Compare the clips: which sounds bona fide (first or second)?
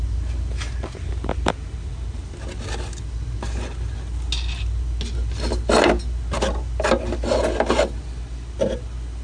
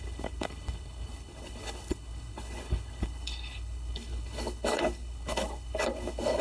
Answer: first